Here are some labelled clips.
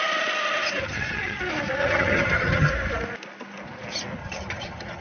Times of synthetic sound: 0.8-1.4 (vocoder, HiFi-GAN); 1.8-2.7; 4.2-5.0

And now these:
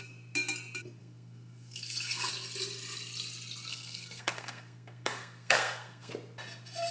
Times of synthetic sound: 1.0-2.3 (codec, SNAC); 3.7-6.1

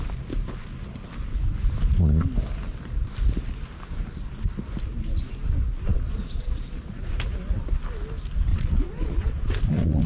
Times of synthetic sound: 5.9-7.1 (vocoder, Vocos); 8.5-10.1

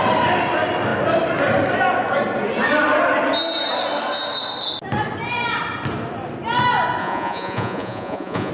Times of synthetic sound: 7.0-8.5 (vocoder, Vocos)

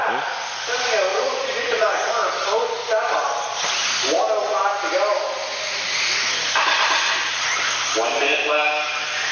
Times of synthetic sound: 1.1-2.1 (vocoder, Vocos)

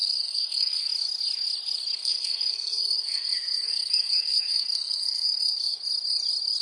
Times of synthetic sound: 0.0-0.9 (codec, SNAC); 2.0-5.8

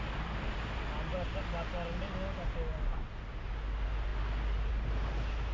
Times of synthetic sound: none

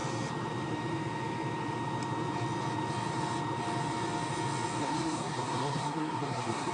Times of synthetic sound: 4.8-6.7 (codec, SNAC)